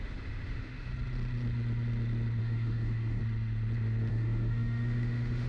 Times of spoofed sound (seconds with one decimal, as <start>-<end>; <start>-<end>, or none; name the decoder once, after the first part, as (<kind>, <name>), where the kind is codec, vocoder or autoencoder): 0.0-0.9 (autoencoder, DAC-VAE); 2.4-3.2; 4.1-5.5